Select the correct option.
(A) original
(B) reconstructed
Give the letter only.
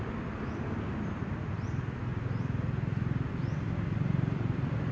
A